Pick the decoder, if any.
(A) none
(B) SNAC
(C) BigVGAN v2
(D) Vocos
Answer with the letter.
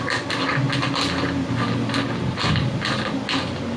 A